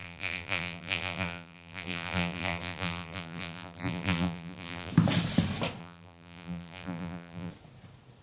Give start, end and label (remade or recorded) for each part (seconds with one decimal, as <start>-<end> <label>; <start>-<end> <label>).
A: 0.0-4.9 remade; 4.9-5.8 recorded; 5.8-7.5 remade; 7.5-8.2 recorded